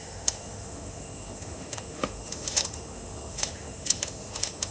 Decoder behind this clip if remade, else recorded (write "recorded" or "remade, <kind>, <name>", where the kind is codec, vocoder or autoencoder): remade, autoencoder, DAC-VAE